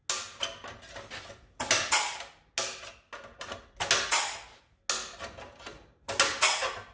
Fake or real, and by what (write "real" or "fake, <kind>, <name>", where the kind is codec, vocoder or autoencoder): real